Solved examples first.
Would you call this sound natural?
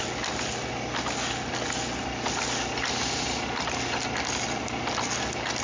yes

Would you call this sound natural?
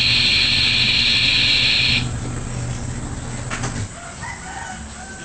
yes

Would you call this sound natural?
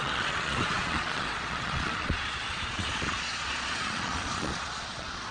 no